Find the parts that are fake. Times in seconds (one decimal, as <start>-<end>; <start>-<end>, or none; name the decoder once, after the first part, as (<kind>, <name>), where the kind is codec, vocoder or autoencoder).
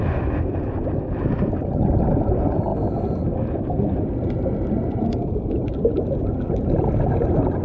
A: none